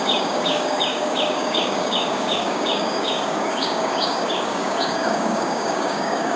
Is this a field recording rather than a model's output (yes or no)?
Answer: no